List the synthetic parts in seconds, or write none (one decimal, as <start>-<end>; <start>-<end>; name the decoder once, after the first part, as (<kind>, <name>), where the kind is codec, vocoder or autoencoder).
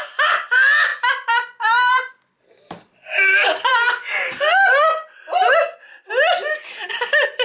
0.0-3.7 (vocoder, BigVGAN v2); 6.9-7.4